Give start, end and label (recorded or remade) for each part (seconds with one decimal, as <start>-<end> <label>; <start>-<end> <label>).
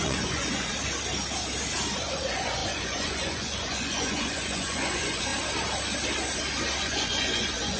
0.0-0.7 remade; 0.7-2.0 recorded; 2.0-5.3 remade; 5.3-6.8 recorded; 6.8-7.8 remade